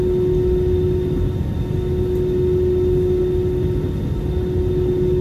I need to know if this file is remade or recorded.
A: recorded